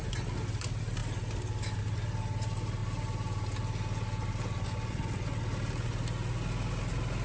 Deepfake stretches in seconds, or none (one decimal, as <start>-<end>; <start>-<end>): none